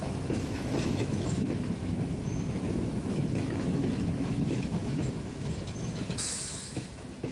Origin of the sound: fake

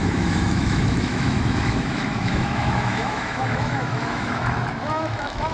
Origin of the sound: fake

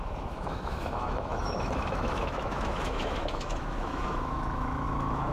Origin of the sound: fake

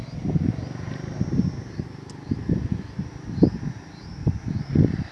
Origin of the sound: real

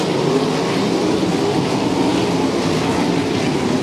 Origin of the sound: real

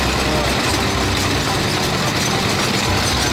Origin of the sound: real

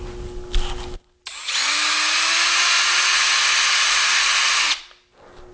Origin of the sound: real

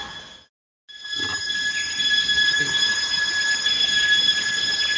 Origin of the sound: real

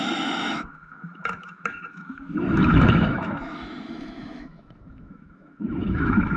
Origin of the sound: fake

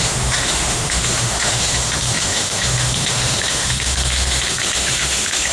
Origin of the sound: fake